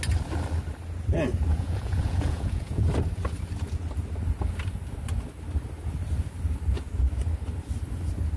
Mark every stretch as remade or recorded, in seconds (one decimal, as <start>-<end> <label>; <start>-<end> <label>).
0.0-1.5 recorded; 1.5-2.8 remade; 2.8-8.4 recorded